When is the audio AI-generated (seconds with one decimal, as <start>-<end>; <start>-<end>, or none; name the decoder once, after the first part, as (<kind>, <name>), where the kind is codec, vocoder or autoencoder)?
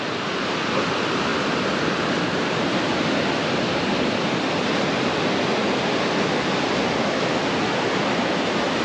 none